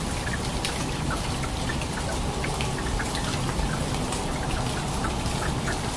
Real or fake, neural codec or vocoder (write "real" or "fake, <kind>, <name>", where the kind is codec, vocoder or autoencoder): real